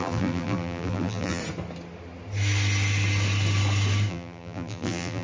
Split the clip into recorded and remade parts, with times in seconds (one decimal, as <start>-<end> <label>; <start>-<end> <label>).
0.0-1.4 remade; 1.4-4.1 recorded; 4.1-5.2 remade